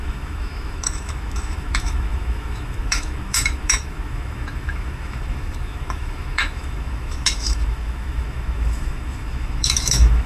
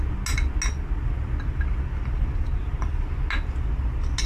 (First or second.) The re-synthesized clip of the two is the first